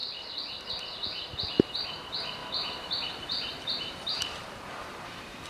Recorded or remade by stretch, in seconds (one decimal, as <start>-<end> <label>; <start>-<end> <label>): 0.0-2.4 recorded; 2.4-5.5 remade